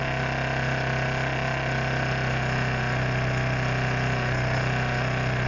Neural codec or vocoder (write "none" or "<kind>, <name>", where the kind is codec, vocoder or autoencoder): none